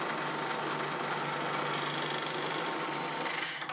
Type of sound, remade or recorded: recorded